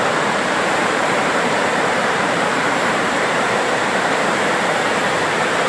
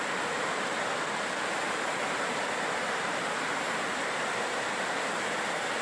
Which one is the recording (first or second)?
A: second